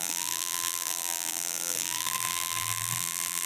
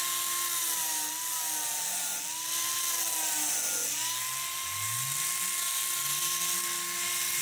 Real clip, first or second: second